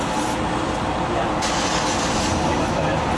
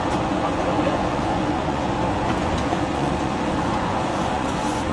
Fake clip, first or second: second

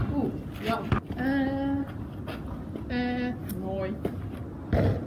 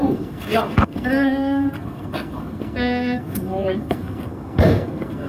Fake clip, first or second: second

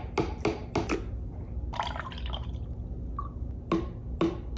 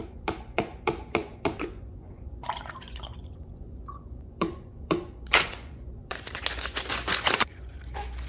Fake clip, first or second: second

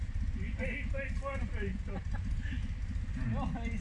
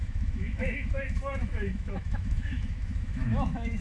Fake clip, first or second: second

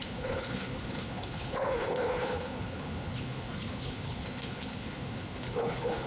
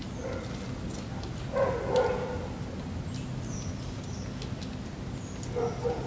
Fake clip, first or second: first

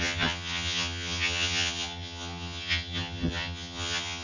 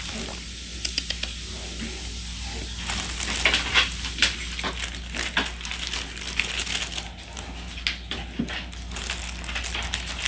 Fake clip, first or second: first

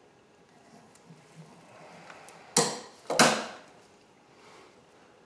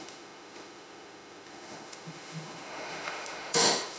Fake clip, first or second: second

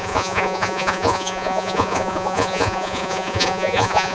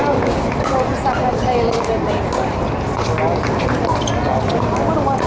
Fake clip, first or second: first